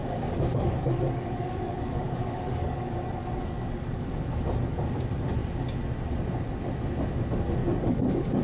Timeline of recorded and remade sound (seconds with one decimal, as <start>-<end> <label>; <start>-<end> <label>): 0.0-4.2 remade; 4.2-7.6 recorded; 7.6-8.4 remade

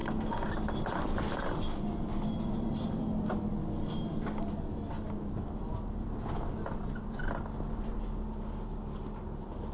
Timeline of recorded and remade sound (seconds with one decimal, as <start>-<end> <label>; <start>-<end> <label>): 0.0-0.5 remade; 0.5-9.7 recorded

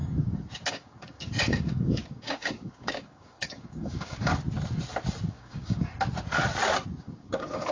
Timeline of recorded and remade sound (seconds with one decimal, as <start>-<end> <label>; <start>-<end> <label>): 0.0-4.3 remade; 4.3-5.2 recorded; 5.2-5.9 remade; 5.9-7.0 recorded; 7.0-7.7 remade

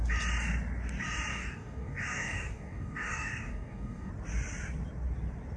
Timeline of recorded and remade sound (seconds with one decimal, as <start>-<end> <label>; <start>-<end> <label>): 0.0-1.3 recorded; 1.3-4.1 remade; 4.1-5.6 recorded

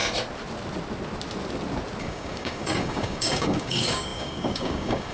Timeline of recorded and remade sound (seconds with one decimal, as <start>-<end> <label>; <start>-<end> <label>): 0.0-2.0 recorded; 2.0-5.1 remade

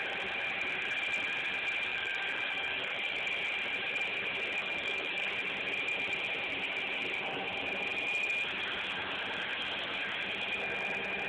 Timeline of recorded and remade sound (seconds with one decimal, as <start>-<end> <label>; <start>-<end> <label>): 0.0-1.9 recorded; 1.9-3.2 remade; 3.2-4.6 recorded; 4.6-5.3 remade; 5.3-11.3 recorded